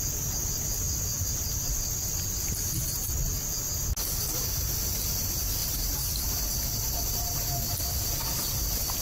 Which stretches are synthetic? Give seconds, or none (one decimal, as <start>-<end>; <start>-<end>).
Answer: 5.6-6.2